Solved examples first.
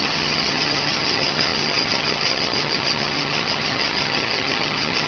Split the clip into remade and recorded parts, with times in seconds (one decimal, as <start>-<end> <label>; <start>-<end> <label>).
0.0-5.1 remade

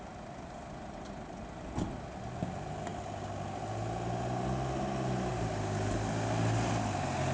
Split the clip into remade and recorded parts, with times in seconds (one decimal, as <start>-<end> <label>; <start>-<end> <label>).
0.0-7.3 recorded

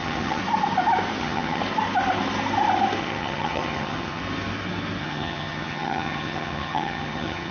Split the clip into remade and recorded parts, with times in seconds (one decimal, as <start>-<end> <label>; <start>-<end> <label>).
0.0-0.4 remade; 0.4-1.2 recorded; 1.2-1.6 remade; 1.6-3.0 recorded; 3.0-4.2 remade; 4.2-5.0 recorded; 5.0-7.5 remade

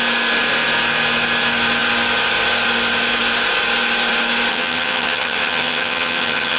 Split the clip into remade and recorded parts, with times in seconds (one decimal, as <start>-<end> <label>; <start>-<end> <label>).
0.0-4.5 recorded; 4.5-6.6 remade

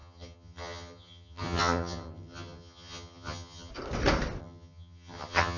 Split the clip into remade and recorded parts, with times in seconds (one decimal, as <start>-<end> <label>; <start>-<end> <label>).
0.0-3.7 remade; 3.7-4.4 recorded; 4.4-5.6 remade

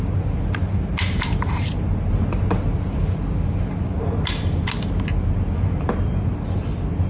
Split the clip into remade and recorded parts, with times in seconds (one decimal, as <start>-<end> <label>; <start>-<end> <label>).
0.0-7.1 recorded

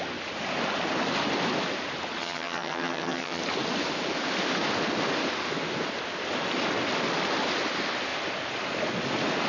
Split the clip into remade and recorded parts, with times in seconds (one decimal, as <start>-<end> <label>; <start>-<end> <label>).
0.0-2.2 recorded; 2.2-3.4 remade; 3.4-9.5 recorded

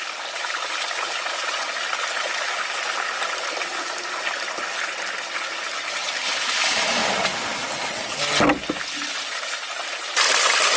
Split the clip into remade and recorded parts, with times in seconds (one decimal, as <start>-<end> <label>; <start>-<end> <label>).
0.0-10.8 recorded